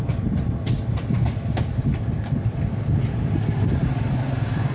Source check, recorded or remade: remade